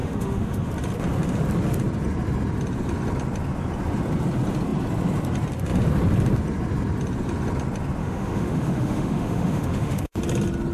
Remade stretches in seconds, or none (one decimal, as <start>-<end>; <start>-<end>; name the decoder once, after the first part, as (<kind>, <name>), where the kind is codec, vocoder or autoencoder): 0.0-0.7 (autoencoder, DAC-VAE); 8.0-10.2